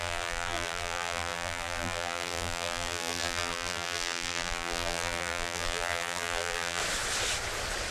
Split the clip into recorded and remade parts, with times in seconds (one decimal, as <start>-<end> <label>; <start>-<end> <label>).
0.0-6.8 remade; 6.8-7.9 recorded